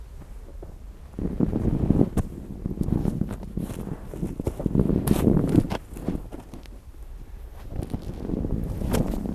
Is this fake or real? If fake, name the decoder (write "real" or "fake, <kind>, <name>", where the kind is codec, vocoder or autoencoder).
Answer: real